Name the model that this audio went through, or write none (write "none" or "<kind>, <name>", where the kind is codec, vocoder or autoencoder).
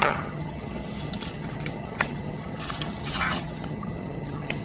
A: vocoder, HiFi-GAN